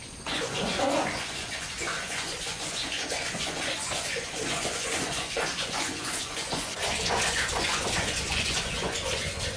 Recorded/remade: remade